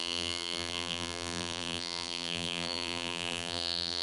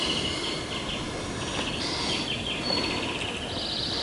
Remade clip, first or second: first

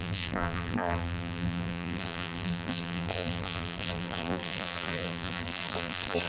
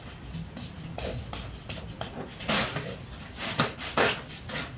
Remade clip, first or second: first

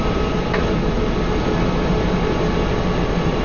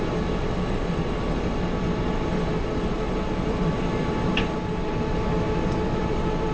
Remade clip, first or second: second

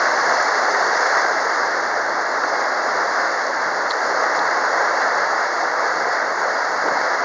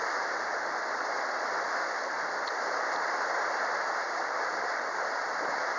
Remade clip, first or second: second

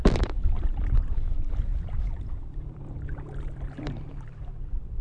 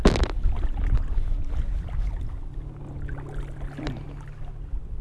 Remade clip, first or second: first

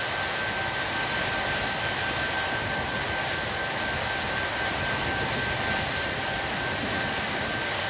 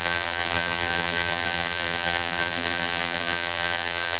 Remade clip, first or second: second